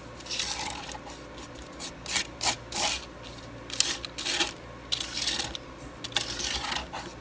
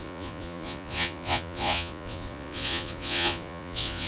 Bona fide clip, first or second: first